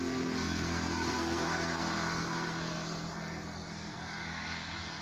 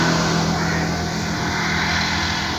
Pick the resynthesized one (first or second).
first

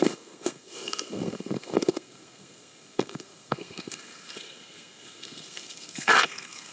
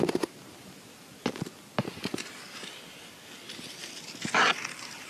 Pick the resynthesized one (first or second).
first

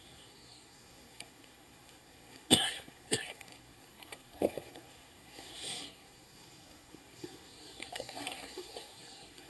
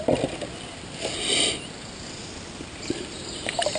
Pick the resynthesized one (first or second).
first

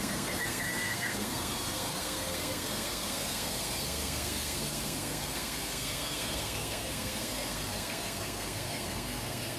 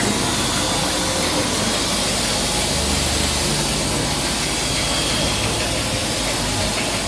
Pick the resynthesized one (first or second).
first